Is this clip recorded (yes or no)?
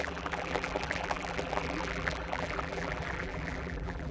no